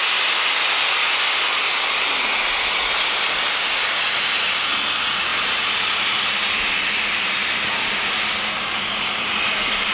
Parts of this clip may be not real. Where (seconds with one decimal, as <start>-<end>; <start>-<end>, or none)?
none